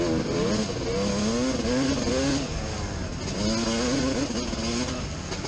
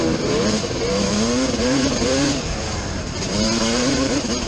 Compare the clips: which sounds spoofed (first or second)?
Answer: second